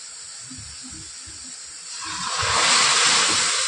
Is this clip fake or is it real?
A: real